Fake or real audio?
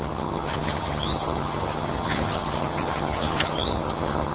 fake